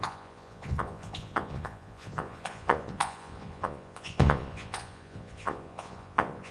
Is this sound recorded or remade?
remade